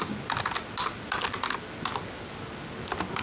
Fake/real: real